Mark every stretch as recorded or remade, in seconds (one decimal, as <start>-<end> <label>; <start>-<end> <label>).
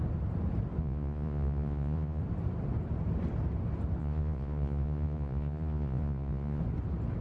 0.0-0.8 recorded; 0.8-2.2 remade; 2.2-4.0 recorded; 4.0-6.6 remade; 6.6-7.2 recorded